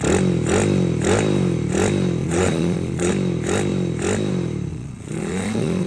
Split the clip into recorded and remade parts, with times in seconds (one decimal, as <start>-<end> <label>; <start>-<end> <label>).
0.0-2.2 recorded; 2.2-3.1 remade; 3.1-4.7 recorded; 4.7-5.9 remade